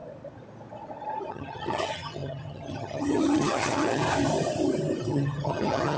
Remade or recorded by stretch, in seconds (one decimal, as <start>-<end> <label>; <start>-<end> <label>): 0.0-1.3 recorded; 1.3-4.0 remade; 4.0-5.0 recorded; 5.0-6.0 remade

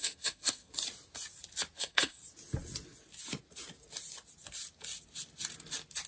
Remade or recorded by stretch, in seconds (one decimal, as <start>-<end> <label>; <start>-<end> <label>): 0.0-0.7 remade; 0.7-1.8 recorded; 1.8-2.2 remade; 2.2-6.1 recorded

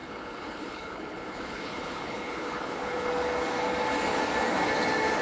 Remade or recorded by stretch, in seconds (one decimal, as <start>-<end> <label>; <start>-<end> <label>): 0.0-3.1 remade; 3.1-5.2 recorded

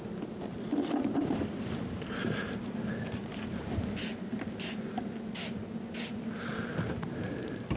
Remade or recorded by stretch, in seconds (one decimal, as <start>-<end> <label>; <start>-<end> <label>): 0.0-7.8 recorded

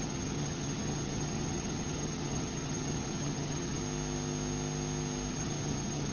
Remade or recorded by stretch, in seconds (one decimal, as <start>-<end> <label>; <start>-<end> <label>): 0.0-3.8 remade; 3.8-5.3 recorded; 5.3-6.1 remade

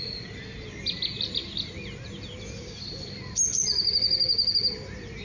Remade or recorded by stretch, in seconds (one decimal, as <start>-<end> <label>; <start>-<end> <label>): 0.0-5.2 recorded

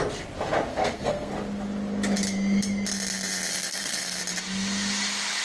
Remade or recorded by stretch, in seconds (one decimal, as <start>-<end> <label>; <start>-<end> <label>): 0.0-0.7 recorded; 0.7-1.3 remade; 1.3-3.5 recorded; 3.5-4.2 remade; 4.2-5.4 recorded